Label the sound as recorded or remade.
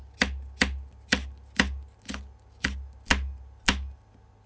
recorded